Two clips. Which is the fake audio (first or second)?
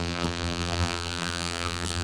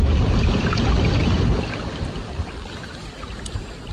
first